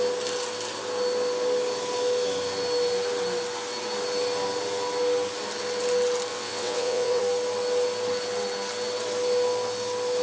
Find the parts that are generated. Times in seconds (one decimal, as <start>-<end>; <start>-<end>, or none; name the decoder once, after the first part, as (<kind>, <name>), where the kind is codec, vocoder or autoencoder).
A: 6.3-7.2 (vocoder, WaveNeXt)